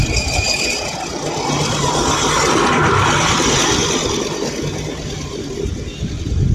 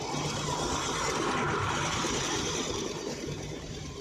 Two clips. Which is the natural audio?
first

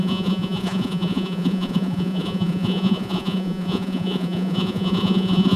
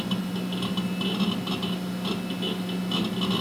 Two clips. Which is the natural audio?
second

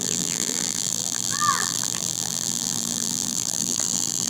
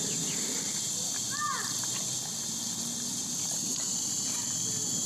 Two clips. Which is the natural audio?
second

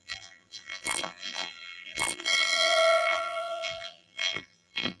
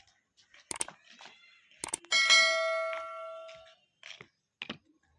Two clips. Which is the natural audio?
second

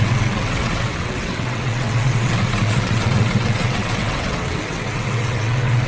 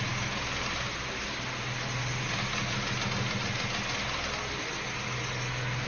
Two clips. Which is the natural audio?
second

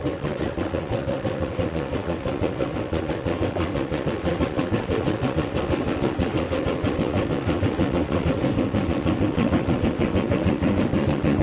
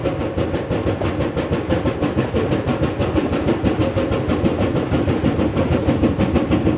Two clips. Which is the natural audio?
second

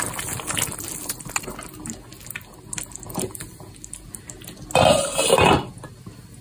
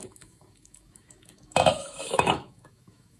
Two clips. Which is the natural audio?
first